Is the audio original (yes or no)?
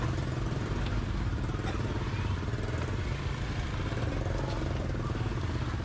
yes